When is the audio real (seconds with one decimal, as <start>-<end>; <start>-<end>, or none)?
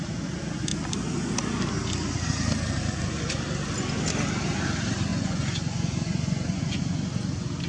0.0-5.1; 6.8-7.7